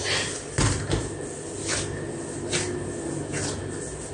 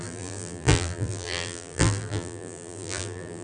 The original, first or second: first